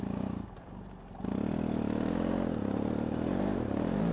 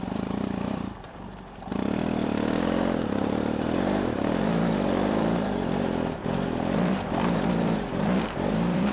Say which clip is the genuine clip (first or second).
first